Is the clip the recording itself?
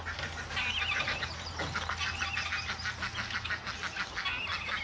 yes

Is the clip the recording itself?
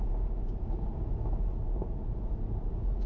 yes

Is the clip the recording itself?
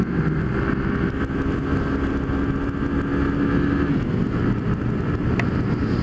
yes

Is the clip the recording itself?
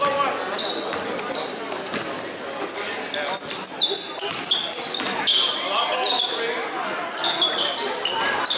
yes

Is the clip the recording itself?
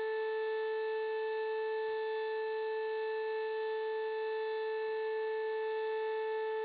yes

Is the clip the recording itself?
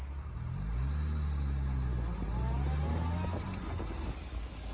yes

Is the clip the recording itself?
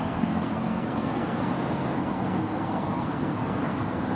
no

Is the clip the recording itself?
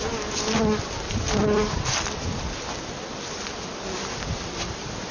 yes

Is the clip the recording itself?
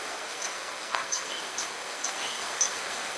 no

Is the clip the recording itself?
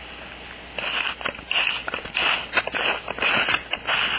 yes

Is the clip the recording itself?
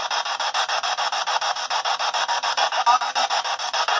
yes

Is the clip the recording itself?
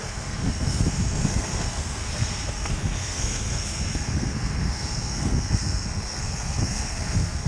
no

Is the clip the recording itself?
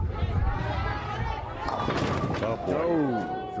yes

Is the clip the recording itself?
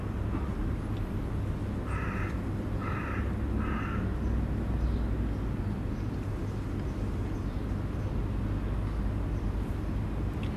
yes